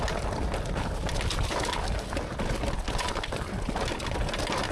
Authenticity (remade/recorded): recorded